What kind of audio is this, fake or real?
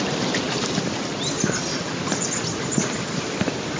real